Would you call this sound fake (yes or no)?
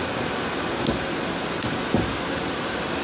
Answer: no